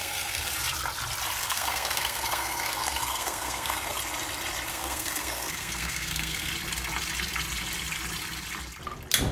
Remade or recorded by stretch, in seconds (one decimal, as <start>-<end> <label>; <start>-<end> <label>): 0.0-0.5 remade; 0.5-1.4 recorded; 1.4-4.0 remade; 4.0-4.7 recorded; 4.7-6.5 remade; 6.5-9.3 recorded